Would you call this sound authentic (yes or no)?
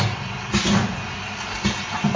yes